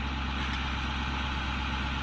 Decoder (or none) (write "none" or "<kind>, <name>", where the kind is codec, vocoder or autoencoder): none